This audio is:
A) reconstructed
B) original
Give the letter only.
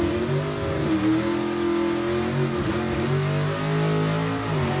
B